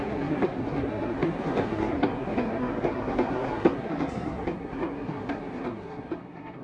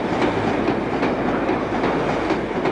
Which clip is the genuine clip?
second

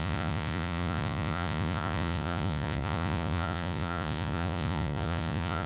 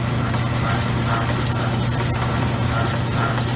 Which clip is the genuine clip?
second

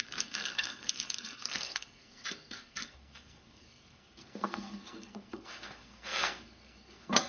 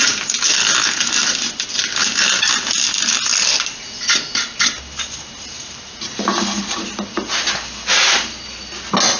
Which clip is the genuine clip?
second